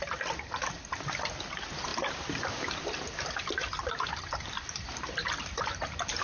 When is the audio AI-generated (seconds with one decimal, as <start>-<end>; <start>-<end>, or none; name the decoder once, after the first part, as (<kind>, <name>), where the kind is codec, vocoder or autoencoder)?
none